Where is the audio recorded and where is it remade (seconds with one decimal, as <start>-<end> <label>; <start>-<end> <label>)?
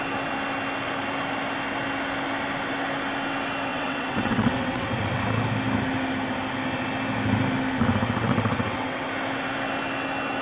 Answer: 0.0-3.7 recorded; 3.7-5.2 remade; 5.2-8.2 recorded; 8.2-9.1 remade; 9.1-10.4 recorded